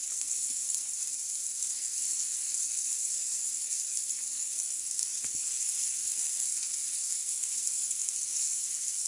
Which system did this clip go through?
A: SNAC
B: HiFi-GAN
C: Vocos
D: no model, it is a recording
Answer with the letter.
A